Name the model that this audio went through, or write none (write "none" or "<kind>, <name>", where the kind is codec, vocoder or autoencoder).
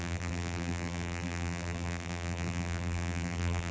vocoder, BigVGAN v2